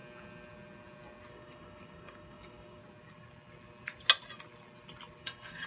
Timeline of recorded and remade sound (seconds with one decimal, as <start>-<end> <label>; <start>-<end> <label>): 0.0-1.3 recorded; 1.3-2.8 remade; 2.8-5.2 recorded; 5.2-5.7 remade

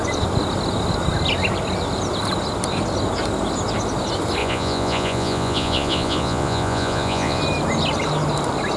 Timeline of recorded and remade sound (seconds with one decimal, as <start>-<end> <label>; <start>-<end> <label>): 0.0-4.4 recorded; 4.4-7.4 remade; 7.4-8.8 recorded

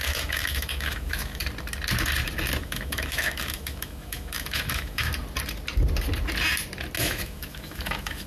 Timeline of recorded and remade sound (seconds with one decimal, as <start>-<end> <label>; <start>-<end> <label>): 0.0-1.4 remade; 1.4-2.6 recorded; 2.6-5.1 remade; 5.1-7.0 recorded; 7.0-8.3 remade